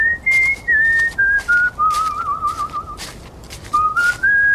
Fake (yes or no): no